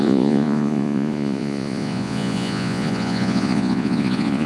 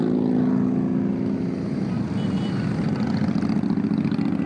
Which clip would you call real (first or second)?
second